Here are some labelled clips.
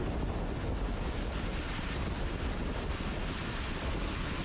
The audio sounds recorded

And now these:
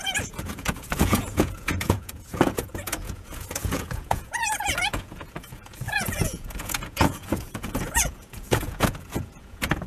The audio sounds remade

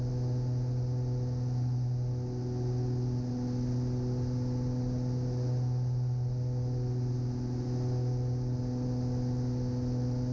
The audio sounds recorded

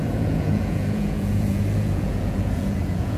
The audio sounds remade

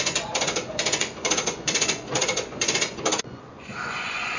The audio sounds remade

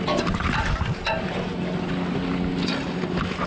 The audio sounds recorded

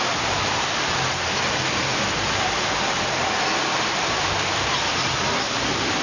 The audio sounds recorded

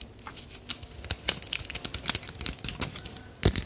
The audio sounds recorded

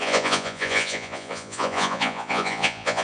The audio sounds remade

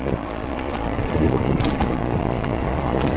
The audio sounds remade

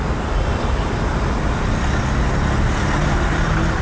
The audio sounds recorded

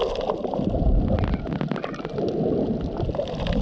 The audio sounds recorded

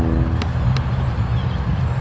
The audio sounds recorded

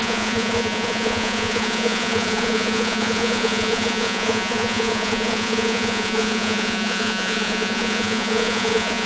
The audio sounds remade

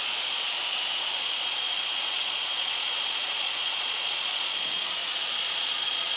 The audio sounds remade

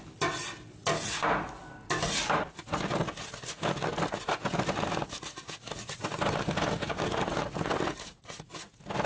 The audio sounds recorded